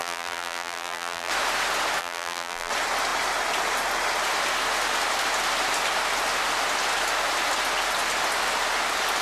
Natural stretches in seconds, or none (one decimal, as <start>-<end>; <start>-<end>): 1.3-2.0; 2.7-9.2